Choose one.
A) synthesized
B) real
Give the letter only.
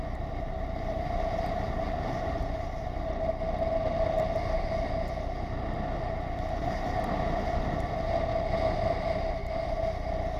B